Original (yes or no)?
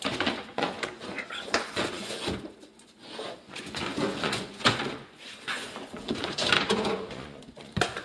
no